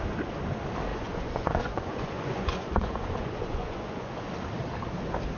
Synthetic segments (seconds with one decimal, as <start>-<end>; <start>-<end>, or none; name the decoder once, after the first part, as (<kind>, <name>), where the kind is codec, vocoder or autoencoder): 0.9-4.1 (vocoder, Vocos)